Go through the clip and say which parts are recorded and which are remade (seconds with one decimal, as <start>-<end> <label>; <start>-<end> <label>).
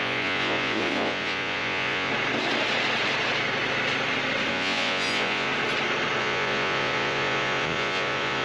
0.0-2.1 remade; 2.1-4.5 recorded; 4.5-5.5 remade; 5.5-6.2 recorded; 6.2-8.4 remade